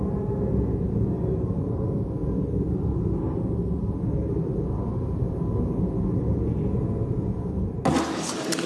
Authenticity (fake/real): real